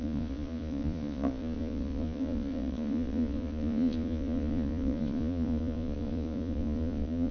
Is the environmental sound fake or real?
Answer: fake